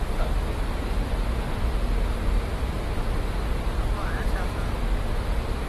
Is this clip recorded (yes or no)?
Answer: yes